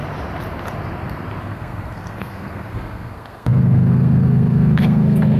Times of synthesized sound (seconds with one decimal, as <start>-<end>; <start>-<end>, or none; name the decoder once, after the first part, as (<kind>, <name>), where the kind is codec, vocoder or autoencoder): 1.4-5.4 (codec, SNAC)